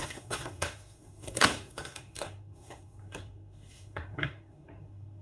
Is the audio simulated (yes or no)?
yes